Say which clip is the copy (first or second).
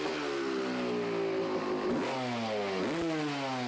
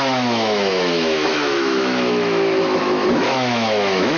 second